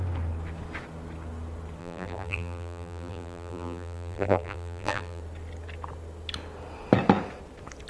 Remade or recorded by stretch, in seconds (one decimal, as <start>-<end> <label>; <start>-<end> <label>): 0.0-1.8 recorded; 1.8-5.2 remade; 5.2-7.9 recorded

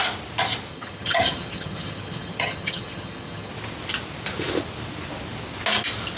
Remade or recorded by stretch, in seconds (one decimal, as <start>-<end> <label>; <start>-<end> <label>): 0.0-0.7 recorded; 0.7-3.5 remade; 3.5-6.2 recorded